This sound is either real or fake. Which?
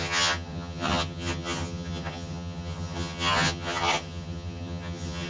fake